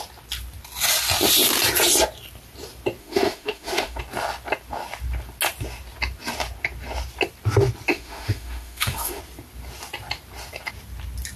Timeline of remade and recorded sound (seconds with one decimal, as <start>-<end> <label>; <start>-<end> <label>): 0.0-3.0 recorded; 3.0-4.0 remade; 4.0-7.9 recorded; 7.9-9.2 remade; 9.2-11.4 recorded